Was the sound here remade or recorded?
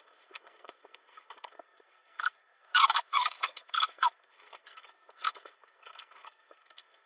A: remade